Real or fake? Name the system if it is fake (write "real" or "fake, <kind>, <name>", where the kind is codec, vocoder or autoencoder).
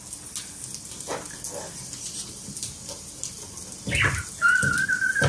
real